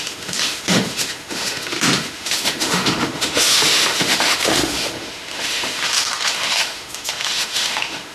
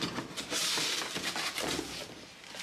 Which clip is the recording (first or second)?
second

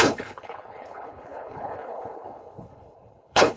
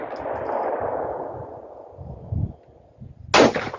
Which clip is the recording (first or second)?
second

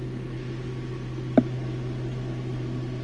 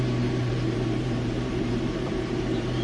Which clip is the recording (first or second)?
first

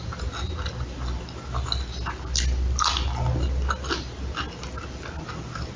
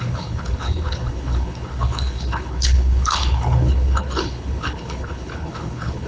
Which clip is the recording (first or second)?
first